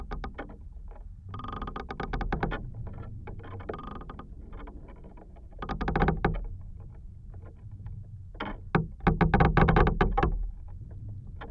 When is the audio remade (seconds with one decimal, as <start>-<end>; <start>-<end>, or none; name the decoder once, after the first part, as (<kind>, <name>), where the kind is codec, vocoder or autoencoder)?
none